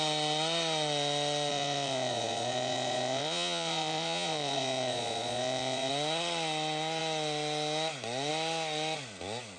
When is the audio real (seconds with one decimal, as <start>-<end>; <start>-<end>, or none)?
0.0-1.5; 5.9-9.6